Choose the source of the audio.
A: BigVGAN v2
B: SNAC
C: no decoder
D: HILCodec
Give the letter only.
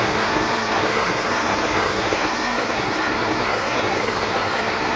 B